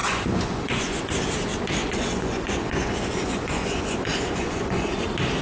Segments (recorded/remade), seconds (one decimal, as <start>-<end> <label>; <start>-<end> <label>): 0.0-1.0 remade; 1.0-1.8 recorded; 1.8-5.0 remade; 5.0-5.4 recorded

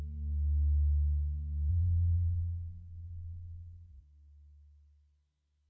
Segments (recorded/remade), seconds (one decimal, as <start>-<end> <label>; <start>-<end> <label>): 0.0-1.7 recorded; 1.7-4.0 remade; 4.0-5.7 recorded

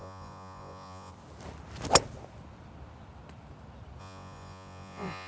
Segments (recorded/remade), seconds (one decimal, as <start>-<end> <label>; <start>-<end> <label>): 0.0-1.1 remade; 1.1-4.0 recorded; 4.0-5.3 remade

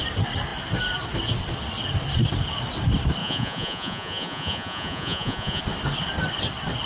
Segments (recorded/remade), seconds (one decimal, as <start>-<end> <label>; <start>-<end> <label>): 0.0-3.2 recorded; 3.2-5.6 remade; 5.6-6.9 recorded

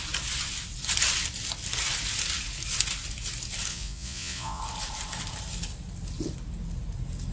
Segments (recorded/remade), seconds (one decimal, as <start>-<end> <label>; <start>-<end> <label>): 0.0-3.7 recorded; 3.7-4.6 remade; 4.6-7.3 recorded

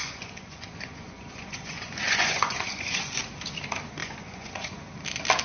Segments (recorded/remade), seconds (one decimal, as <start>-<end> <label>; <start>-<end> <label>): 0.0-3.2 remade; 3.2-4.0 recorded; 4.0-4.8 remade; 4.8-5.4 recorded